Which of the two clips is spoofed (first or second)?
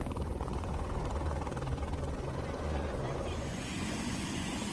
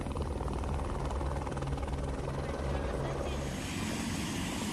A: first